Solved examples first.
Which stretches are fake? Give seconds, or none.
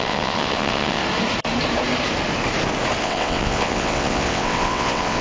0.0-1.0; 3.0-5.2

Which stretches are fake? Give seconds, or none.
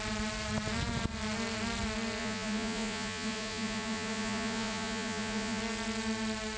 2.2-5.6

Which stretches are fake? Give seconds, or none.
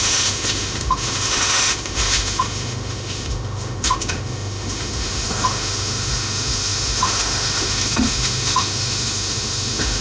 0.0-10.0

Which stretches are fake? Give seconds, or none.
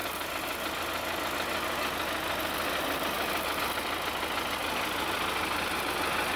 4.6-5.2